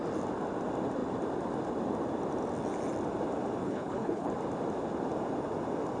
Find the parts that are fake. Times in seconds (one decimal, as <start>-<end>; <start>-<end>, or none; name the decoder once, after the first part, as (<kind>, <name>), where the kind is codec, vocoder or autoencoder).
3.6-4.3 (codec, HILCodec)